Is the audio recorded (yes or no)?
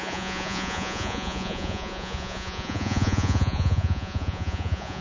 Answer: no